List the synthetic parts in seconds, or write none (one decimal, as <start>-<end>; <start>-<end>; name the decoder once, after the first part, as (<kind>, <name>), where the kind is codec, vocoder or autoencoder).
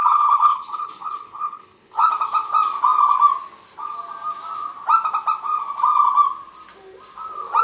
0.0-2.1 (codec, HILCodec)